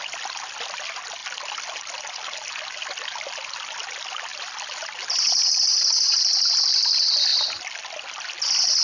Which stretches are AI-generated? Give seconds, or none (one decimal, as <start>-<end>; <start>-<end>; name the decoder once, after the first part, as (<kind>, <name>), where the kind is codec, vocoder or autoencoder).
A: 1.2-2.5 (vocoder, BigVGAN v2); 4.3-4.9